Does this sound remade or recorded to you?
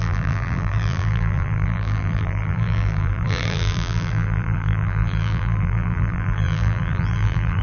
remade